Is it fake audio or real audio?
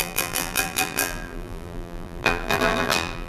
fake